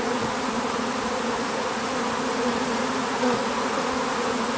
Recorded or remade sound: remade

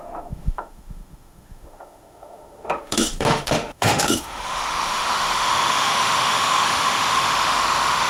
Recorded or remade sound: remade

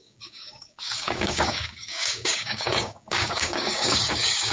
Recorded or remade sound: remade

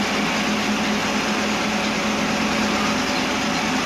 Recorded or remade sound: recorded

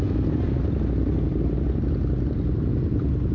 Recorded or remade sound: recorded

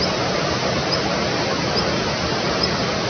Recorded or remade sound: recorded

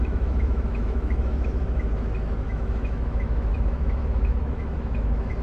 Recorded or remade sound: remade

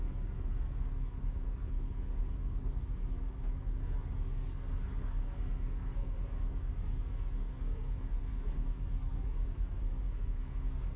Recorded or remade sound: remade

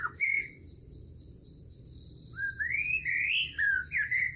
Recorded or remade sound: recorded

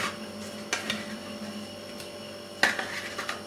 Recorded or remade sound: recorded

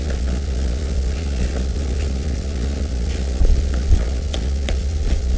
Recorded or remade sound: remade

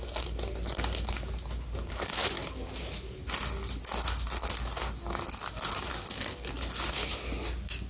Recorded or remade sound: recorded